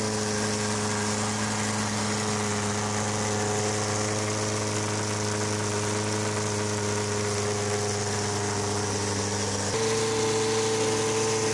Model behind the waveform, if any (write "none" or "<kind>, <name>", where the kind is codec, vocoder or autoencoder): none